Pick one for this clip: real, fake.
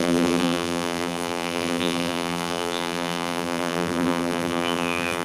fake